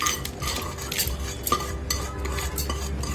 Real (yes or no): yes